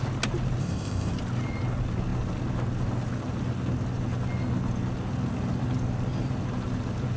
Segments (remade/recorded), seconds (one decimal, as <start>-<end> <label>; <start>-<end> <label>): 0.0-0.6 recorded; 0.6-1.1 remade; 1.1-7.2 recorded